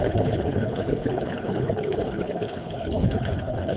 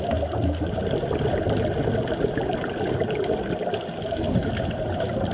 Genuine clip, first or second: second